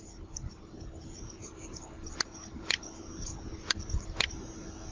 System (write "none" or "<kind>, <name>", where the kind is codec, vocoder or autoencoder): none